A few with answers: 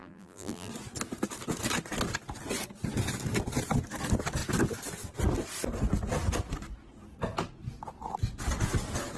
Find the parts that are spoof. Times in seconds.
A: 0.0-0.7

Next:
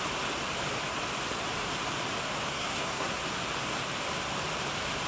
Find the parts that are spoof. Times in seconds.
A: 2.5-3.2

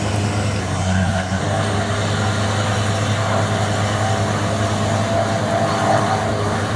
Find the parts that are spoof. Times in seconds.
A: 0.6-1.4

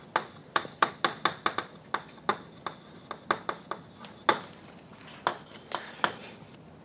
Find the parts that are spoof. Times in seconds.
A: 0.4-0.9

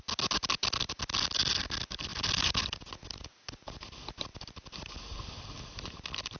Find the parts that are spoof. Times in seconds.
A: none

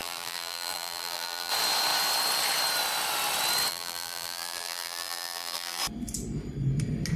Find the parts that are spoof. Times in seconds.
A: 0.0-1.5; 3.7-5.8